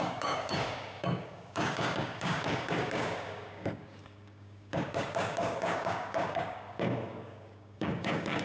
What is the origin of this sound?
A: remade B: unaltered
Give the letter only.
A